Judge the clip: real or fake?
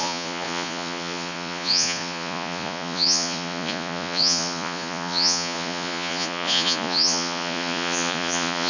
fake